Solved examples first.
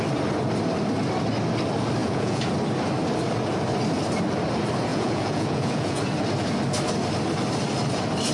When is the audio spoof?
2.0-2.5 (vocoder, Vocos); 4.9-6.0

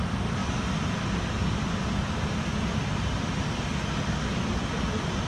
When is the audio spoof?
none

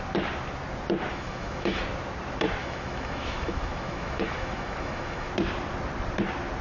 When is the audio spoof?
1.1-1.8 (autoencoder, DAC-VAE); 2.6-5.3